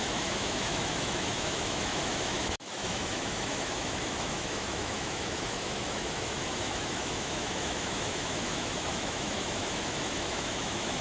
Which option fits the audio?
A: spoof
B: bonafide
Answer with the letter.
A